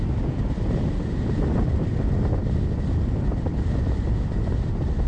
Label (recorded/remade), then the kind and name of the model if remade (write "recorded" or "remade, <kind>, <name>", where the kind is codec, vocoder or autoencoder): recorded